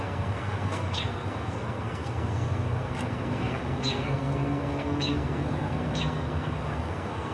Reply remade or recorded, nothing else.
remade